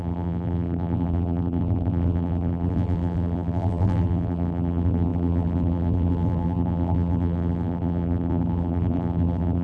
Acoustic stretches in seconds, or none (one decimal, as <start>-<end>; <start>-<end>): none